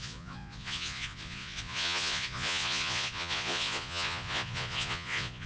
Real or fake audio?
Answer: fake